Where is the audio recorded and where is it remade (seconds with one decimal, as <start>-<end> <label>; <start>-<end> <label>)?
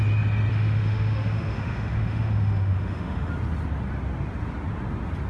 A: 0.0-0.5 recorded; 0.5-3.3 remade; 3.3-5.3 recorded